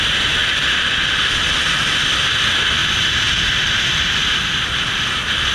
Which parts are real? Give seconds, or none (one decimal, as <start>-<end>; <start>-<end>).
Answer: 0.0-5.5